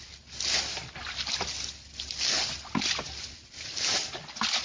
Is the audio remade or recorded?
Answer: recorded